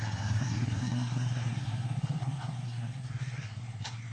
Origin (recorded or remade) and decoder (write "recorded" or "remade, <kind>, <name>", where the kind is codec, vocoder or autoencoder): remade, codec, SNAC